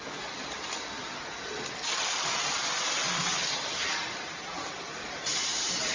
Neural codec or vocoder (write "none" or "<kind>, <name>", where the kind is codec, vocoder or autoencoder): none